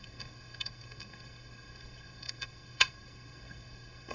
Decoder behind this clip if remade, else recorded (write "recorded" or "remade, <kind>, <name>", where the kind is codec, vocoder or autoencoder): remade, codec, SNAC